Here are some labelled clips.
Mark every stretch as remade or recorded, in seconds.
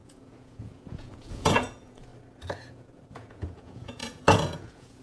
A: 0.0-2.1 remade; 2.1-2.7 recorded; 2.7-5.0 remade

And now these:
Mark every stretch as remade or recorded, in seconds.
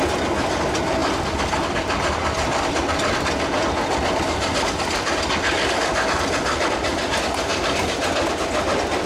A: 0.0-9.1 recorded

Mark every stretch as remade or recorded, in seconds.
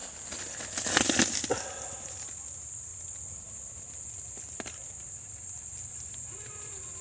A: 0.0-2.9 recorded; 2.9-5.9 remade; 5.9-7.0 recorded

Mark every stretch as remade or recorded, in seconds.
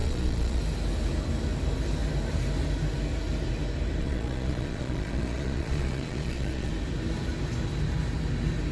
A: 0.0-0.6 remade; 0.6-4.0 recorded; 4.0-6.7 remade; 6.7-8.7 recorded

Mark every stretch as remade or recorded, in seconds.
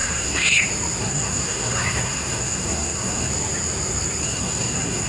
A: 0.0-0.6 remade; 0.6-1.0 recorded; 1.0-3.3 remade; 3.3-4.2 recorded; 4.2-5.1 remade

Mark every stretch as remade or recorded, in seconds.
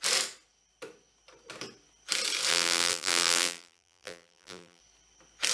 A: 0.0-2.5 recorded; 2.5-4.8 remade; 4.8-5.5 recorded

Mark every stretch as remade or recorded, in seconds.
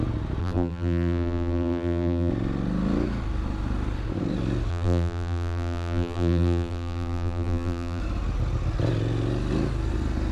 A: 0.0-0.4 recorded; 0.4-2.3 remade; 2.3-4.7 recorded; 4.7-8.0 remade; 8.0-10.3 recorded